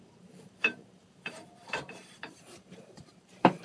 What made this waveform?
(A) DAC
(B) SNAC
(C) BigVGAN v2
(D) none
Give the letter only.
C